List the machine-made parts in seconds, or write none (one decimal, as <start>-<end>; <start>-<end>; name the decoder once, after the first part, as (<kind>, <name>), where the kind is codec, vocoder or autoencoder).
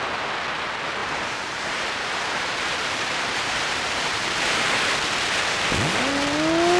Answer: 1.0-4.8 (vocoder, BigVGAN v2)